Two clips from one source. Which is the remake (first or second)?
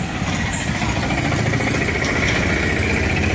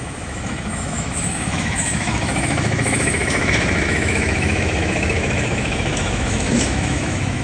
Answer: second